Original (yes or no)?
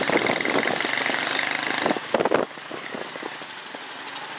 yes